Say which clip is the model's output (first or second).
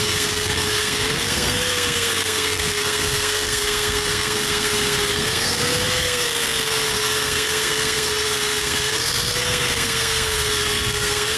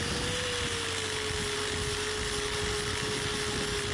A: first